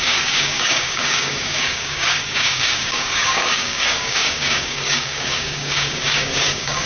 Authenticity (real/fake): fake